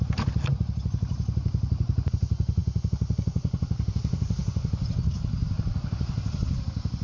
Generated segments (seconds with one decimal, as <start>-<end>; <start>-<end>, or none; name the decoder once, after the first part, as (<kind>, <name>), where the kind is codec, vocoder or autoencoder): none